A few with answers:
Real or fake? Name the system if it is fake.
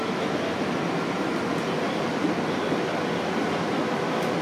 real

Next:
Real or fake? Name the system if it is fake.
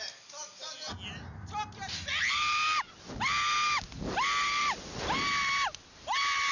real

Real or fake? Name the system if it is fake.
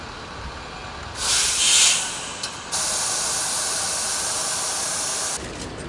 real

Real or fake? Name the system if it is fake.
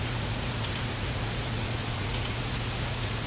fake, vocoder, Vocos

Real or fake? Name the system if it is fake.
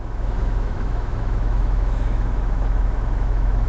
fake, autoencoder, DAC-VAE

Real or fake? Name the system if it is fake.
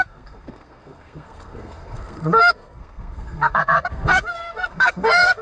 fake, codec, SNAC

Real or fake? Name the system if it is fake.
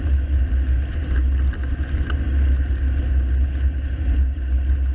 real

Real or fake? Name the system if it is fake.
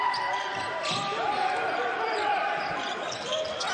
real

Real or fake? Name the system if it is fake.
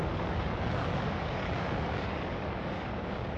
fake, codec, DAC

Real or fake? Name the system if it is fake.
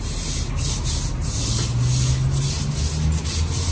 real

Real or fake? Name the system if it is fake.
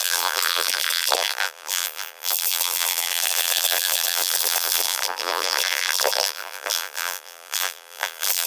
fake, vocoder, BigVGAN v2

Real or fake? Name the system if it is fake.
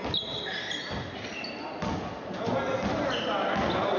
real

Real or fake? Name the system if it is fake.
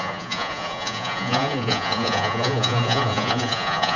fake, vocoder, Vocos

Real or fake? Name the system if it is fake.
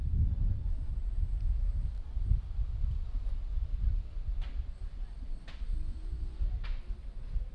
real